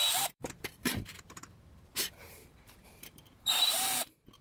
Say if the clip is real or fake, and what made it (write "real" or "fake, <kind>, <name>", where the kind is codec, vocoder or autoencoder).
fake, vocoder, BigVGAN v2